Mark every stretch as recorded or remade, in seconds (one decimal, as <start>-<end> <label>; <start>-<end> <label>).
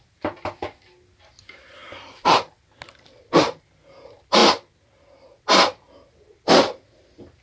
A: 0.0-7.4 recorded